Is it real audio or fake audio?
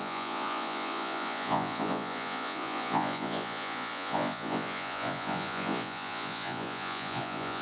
fake